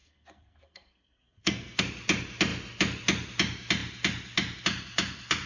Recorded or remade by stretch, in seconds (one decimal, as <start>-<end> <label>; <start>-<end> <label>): 0.0-1.8 remade; 1.8-5.5 recorded